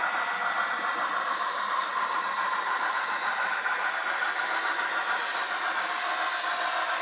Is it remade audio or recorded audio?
recorded